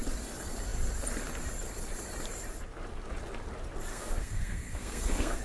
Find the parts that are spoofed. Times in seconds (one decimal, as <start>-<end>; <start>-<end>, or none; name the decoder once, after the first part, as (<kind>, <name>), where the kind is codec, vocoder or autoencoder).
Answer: 3.9-5.4 (codec, SNAC)